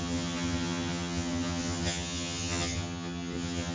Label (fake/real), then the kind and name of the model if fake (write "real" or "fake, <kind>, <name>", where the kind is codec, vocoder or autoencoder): fake, vocoder, HiFi-GAN